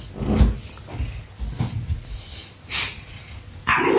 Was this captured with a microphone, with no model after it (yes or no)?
yes